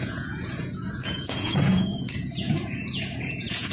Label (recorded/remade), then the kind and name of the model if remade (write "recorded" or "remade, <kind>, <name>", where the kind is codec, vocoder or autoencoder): remade, vocoder, Vocos